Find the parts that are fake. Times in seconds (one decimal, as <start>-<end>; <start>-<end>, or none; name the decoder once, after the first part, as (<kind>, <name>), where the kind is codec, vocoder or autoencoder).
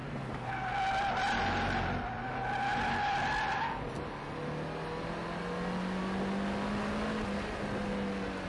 0.0-0.5 (vocoder, BigVGAN v2)